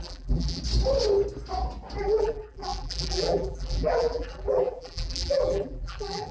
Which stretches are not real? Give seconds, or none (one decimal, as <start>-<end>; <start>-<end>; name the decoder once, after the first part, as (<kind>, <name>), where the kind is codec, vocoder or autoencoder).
0.0-0.6 (vocoder, BigVGAN v2); 2.0-6.3